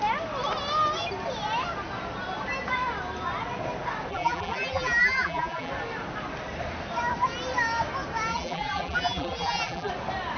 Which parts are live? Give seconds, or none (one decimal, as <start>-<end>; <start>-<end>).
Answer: 0.0-4.1; 5.7-8.3; 9.9-10.4

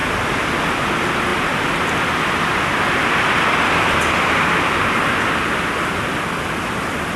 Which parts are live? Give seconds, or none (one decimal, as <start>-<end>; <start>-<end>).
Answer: 0.0-7.2

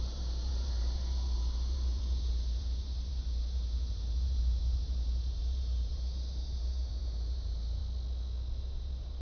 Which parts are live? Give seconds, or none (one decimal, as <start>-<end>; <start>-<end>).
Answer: 7.8-8.6

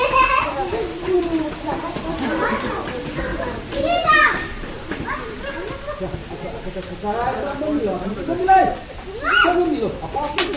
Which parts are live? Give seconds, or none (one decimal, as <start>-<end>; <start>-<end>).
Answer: 0.0-0.9; 1.9-3.3; 5.4-6.2; 6.7-10.6

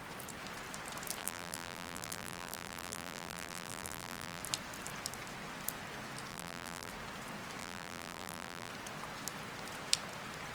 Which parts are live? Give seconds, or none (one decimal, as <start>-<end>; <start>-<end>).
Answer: 0.0-1.2; 4.4-6.3; 6.9-7.6; 8.7-10.5

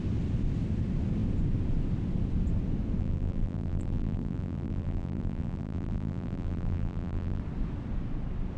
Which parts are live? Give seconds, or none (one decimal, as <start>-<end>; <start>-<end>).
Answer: 0.0-3.0; 7.4-8.6

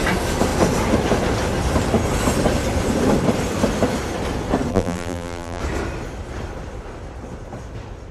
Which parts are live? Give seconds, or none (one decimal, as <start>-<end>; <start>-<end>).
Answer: 0.0-4.7; 5.6-8.1